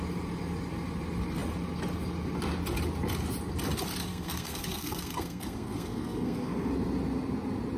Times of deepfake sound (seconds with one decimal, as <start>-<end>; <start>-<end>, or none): 4.1-6.7